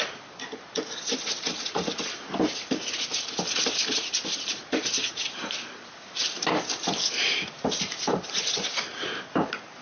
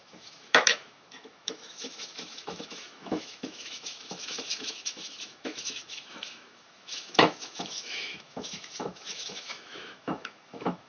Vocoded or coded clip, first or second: second